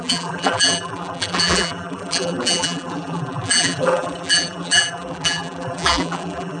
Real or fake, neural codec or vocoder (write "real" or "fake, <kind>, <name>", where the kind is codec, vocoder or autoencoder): fake, vocoder, BigVGAN v2